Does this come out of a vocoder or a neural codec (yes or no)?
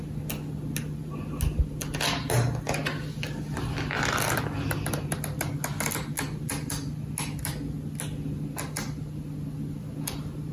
no